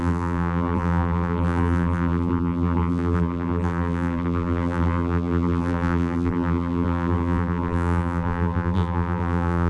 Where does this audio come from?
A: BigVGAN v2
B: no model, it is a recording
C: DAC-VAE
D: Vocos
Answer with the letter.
A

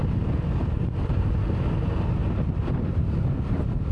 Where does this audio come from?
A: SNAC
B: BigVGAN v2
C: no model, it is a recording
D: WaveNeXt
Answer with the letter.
C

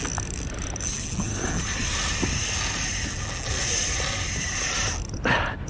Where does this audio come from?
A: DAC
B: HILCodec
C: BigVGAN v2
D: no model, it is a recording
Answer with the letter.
D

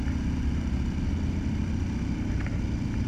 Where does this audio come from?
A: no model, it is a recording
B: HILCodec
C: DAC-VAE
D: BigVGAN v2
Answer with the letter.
A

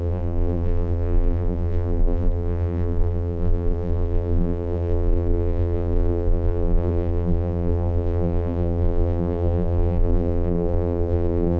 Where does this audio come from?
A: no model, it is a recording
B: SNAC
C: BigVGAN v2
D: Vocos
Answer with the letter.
C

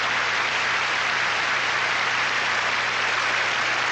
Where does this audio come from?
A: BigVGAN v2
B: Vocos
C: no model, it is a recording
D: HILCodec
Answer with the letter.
A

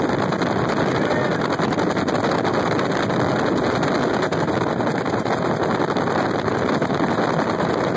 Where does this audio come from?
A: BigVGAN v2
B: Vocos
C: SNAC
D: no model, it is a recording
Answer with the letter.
D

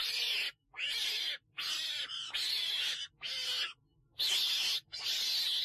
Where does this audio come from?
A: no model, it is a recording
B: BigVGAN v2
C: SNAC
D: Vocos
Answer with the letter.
A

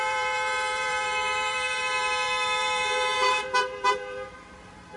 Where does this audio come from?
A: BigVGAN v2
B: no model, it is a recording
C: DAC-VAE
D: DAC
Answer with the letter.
A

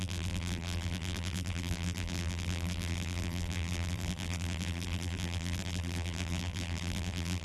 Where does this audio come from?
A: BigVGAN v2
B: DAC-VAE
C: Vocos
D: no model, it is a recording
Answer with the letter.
A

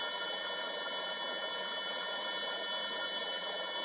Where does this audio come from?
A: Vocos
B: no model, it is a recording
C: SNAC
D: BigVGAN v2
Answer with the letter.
D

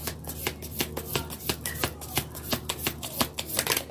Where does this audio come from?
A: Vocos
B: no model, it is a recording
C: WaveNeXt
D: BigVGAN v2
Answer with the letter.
B